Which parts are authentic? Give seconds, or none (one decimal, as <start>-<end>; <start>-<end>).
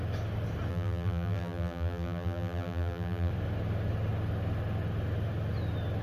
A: 0.0-0.7; 3.3-6.0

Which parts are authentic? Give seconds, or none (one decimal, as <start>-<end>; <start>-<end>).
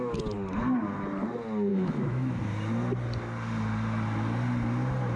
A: 0.0-1.7; 2.4-5.2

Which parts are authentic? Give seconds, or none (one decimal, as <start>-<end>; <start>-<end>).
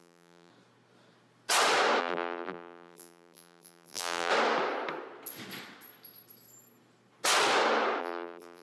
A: 0.5-2.0; 4.3-8.0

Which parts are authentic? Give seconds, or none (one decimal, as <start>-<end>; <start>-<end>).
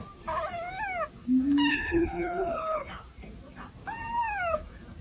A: 0.0-1.7; 2.9-5.0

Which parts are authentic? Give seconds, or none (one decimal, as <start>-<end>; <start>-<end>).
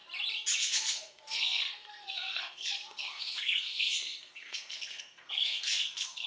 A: 0.0-0.6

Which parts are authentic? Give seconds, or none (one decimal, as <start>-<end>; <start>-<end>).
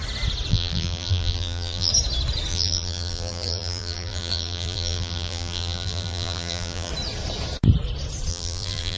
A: 0.0-0.5; 1.9-2.5; 6.9-8.3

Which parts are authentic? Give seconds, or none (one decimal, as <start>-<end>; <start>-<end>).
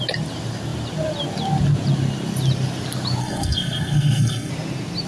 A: 0.0-3.2; 4.5-5.1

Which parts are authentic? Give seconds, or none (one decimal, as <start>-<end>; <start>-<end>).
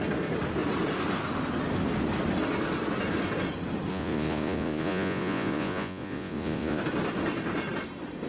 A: 0.0-3.9; 6.8-8.3